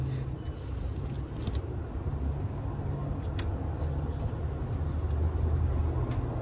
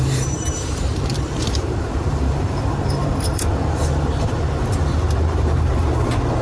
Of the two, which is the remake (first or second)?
second